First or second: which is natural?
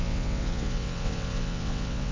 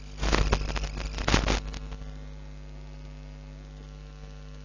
second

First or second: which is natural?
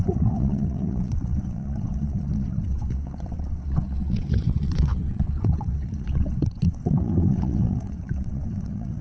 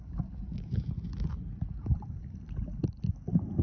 second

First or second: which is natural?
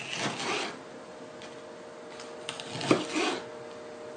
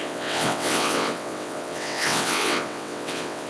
first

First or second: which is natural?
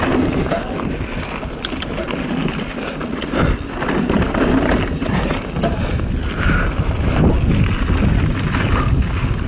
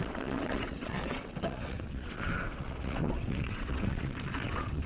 first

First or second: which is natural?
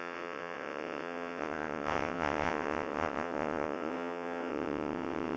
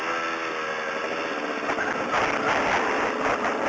second